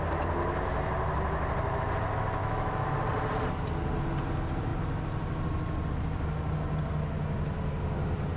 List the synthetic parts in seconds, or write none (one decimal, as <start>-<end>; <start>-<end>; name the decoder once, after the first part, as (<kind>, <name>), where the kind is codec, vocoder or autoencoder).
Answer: 2.4-2.9 (autoencoder, DAC-VAE)